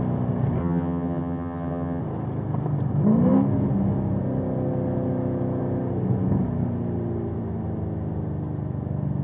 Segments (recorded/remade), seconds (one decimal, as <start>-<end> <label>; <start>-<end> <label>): 0.0-0.6 recorded; 0.6-2.0 remade; 2.0-9.2 recorded

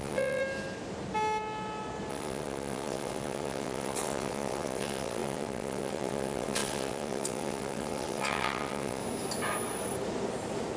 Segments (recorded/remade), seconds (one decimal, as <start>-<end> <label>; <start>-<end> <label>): 0.0-0.4 remade; 0.4-2.1 recorded; 2.1-9.0 remade; 9.0-10.8 recorded

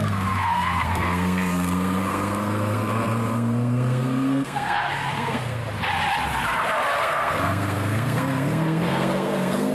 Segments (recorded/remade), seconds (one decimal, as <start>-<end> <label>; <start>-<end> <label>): 0.0-5.6 remade; 5.6-7.0 recorded; 7.0-9.7 remade

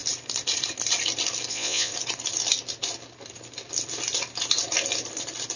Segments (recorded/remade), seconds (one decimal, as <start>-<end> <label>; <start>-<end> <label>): 0.0-1.5 recorded; 1.5-1.9 remade; 1.9-5.6 recorded

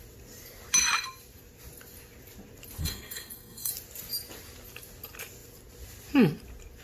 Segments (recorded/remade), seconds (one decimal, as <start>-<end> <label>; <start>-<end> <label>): 0.0-2.8 recorded; 2.8-3.7 remade; 3.7-6.8 recorded

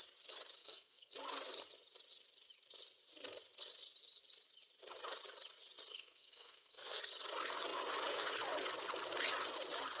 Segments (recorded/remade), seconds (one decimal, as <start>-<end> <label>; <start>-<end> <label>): 0.0-0.6 recorded; 0.6-1.1 remade; 1.1-5.9 recorded; 5.9-7.0 remade; 7.0-10.0 recorded

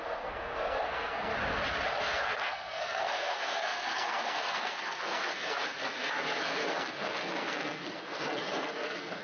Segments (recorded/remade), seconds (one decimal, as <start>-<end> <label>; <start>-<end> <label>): 0.0-1.3 remade; 1.3-2.0 recorded; 2.0-9.2 remade

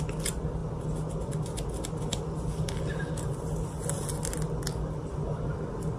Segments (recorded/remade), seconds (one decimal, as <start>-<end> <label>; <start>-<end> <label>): 0.0-6.0 recorded